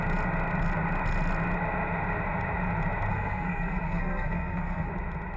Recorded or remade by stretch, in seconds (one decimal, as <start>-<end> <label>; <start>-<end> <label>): 0.0-3.1 recorded; 3.1-4.9 remade; 4.9-5.4 recorded